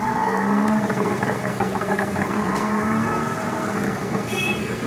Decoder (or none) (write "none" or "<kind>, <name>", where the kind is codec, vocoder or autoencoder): codec, SNAC